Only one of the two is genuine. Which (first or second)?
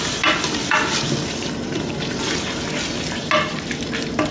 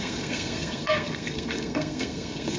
first